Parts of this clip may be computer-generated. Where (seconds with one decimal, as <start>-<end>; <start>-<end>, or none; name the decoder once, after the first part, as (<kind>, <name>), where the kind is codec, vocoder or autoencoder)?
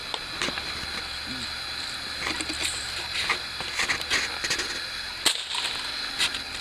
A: 2.6-3.2 (vocoder, BigVGAN v2)